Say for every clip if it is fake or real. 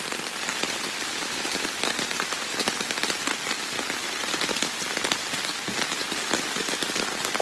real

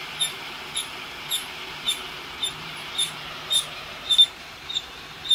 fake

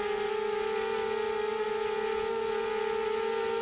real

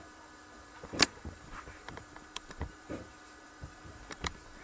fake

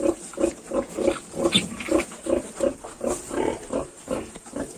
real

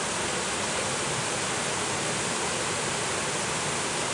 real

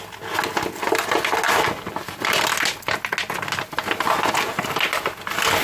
real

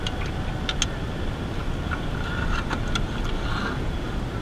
real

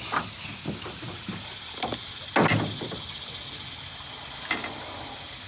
real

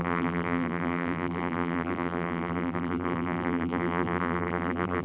fake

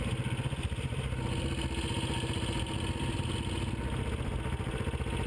real